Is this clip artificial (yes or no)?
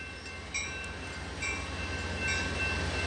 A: no